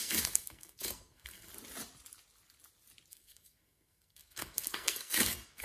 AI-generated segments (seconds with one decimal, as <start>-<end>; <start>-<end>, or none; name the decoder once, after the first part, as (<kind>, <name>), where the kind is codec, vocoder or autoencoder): 0.0-1.5 (codec, SNAC); 3.1-5.6